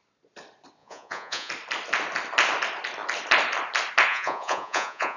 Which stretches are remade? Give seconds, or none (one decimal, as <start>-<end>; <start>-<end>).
0.8-1.5; 4.1-5.2